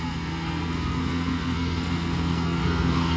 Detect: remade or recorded remade